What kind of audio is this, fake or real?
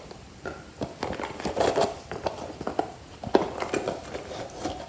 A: real